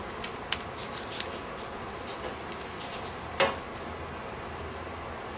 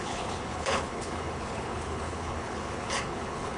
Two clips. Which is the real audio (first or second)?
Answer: first